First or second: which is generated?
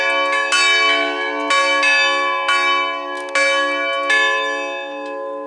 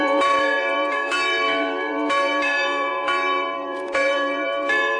second